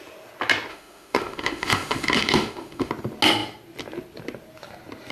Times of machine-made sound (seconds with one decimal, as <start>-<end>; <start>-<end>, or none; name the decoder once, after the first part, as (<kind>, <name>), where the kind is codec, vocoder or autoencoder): 0.7-2.9 (autoencoder, DAC-VAE)